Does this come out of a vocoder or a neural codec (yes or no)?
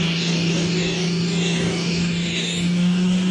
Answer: yes